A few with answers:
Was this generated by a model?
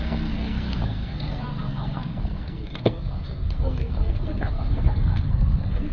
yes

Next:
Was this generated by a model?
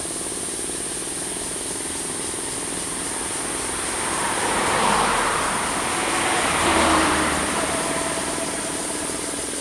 no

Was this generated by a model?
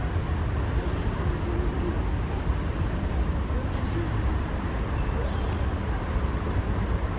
no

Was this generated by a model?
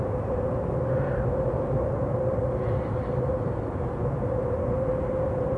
no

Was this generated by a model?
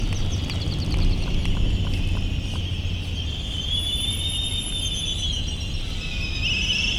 no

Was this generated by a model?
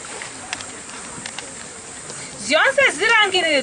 yes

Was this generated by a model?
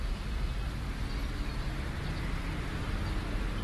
no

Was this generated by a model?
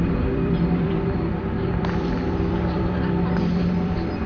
yes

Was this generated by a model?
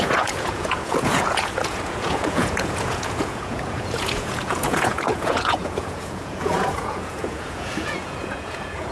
yes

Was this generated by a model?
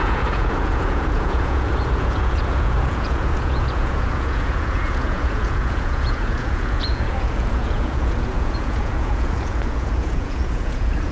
yes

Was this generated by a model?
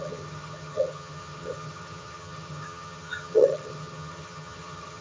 yes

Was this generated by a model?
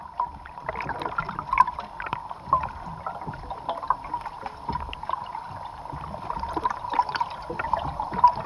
no